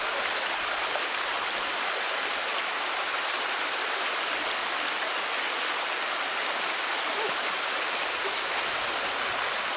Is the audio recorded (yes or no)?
yes